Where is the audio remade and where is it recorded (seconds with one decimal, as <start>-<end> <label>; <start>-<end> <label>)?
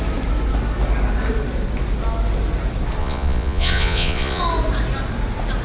0.0-3.0 recorded; 3.0-4.4 remade; 4.4-5.6 recorded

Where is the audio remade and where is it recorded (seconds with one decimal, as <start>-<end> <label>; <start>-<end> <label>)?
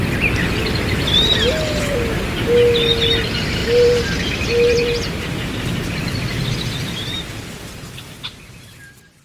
0.0-3.6 recorded; 3.6-6.0 remade; 6.0-9.2 recorded